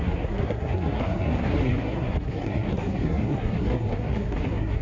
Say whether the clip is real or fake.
fake